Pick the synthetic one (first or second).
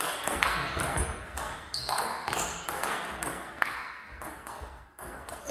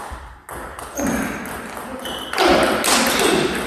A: first